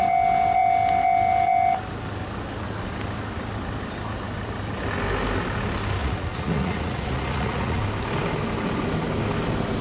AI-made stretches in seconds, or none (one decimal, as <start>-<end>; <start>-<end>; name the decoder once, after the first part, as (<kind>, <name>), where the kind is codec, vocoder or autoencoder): 6.0-7.8 (vocoder, Vocos)